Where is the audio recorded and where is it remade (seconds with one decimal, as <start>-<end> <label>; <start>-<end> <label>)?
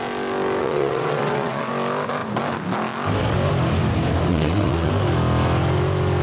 0.0-0.6 recorded; 0.6-1.7 remade; 1.7-4.3 recorded; 4.3-4.9 remade; 4.9-6.2 recorded